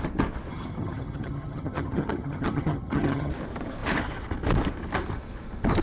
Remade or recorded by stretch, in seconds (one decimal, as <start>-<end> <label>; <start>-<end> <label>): 0.0-0.5 recorded; 0.5-3.3 remade; 3.3-5.8 recorded